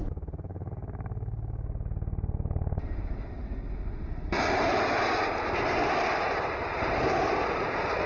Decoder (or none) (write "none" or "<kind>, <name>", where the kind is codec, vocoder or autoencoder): none